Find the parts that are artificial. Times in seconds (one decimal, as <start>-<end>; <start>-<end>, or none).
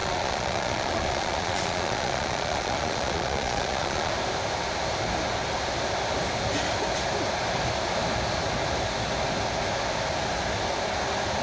0.0-4.1